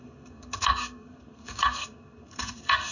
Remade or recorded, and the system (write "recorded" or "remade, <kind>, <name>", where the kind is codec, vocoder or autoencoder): remade, codec, SNAC